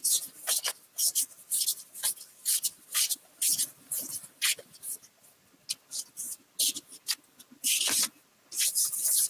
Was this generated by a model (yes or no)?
no